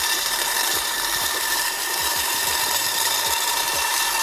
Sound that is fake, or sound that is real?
fake